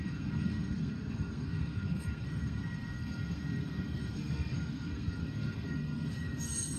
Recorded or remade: remade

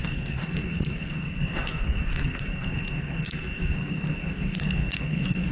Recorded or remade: remade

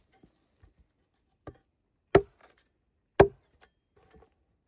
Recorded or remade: recorded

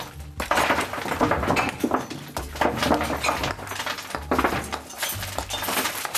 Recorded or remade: recorded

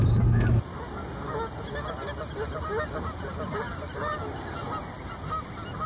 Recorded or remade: recorded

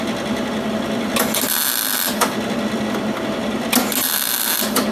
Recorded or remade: recorded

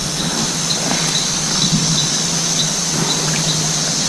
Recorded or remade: recorded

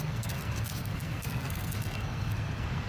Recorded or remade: remade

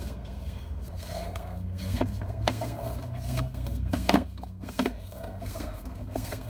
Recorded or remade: remade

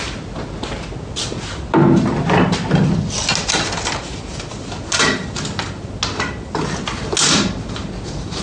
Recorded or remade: recorded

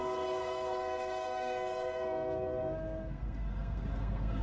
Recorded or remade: remade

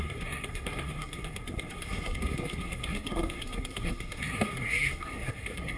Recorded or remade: remade